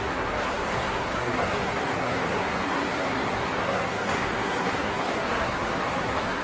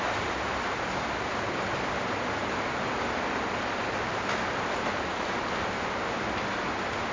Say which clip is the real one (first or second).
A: second